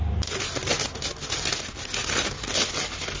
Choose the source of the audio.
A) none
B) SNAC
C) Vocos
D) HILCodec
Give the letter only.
A